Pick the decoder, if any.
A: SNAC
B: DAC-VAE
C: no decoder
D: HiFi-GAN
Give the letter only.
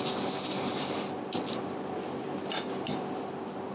C